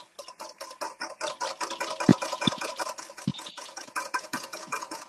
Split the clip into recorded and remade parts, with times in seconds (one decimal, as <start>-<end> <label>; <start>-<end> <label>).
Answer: 0.0-2.1 recorded; 2.1-2.7 remade; 2.7-3.3 recorded; 3.3-5.1 remade